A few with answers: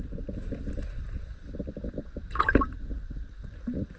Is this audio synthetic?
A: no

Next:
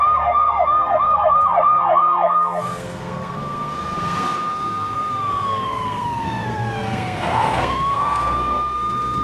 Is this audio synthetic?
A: yes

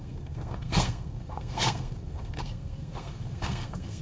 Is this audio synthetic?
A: yes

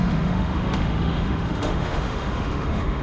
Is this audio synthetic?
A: yes